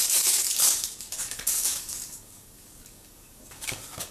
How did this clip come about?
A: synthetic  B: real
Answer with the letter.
A